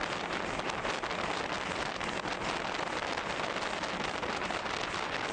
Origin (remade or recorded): recorded